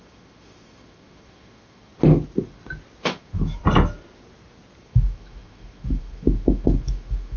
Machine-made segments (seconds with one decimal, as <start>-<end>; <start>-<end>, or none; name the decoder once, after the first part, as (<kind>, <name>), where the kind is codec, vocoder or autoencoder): 0.0-1.9 (autoencoder, DAC-VAE); 3.0-3.6; 4.8-7.4